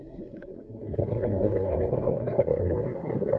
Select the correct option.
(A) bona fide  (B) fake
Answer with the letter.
B